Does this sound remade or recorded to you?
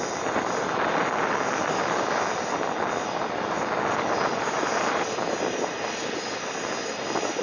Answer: recorded